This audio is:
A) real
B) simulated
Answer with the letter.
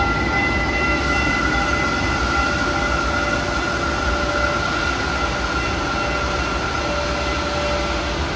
A